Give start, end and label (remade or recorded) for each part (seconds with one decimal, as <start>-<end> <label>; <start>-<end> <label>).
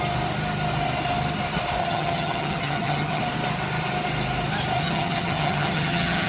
0.0-1.8 recorded; 1.8-3.2 remade; 3.2-4.8 recorded; 4.8-6.3 remade